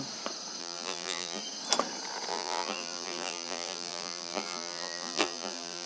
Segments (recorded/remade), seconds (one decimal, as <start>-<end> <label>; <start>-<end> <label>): 0.0-0.6 recorded; 0.6-1.4 remade; 1.4-2.3 recorded; 2.3-5.9 remade